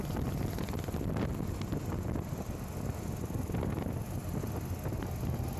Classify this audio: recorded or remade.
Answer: recorded